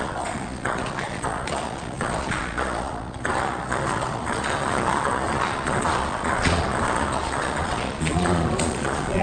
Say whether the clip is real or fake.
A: fake